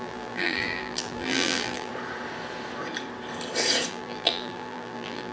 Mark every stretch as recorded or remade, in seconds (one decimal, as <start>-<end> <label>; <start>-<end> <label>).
0.0-1.9 remade; 1.9-3.9 recorded; 3.9-5.3 remade